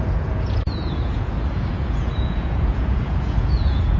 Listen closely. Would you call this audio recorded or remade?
remade